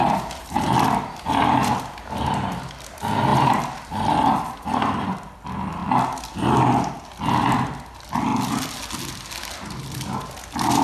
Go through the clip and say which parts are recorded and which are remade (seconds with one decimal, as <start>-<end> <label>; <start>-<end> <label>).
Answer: 0.0-3.3 recorded; 3.3-5.1 remade; 5.1-10.8 recorded